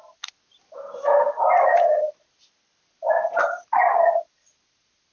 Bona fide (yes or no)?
yes